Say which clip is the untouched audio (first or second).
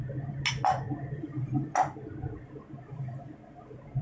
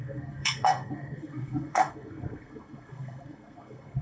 first